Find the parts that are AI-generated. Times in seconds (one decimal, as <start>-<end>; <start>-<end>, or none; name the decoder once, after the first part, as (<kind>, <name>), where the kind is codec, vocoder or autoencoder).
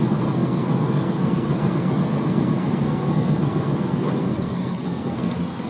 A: 0.0-5.7 (codec, SNAC)